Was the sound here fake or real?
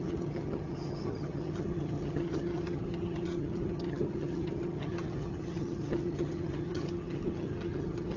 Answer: fake